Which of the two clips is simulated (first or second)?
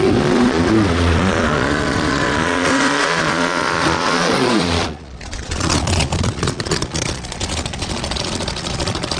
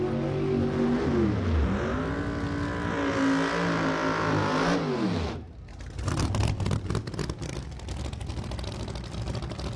first